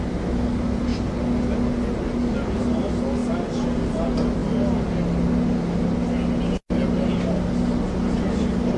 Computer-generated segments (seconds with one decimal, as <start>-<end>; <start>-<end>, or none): none